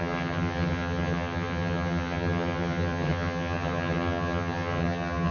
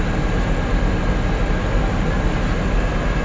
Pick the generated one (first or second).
first